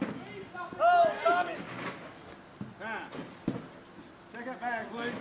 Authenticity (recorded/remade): recorded